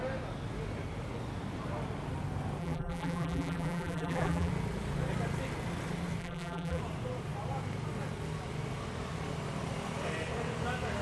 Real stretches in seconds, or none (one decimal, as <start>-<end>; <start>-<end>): 0.0-2.6; 4.5-6.2; 6.8-11.0